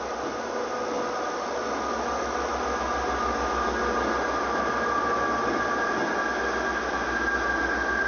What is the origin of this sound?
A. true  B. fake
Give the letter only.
A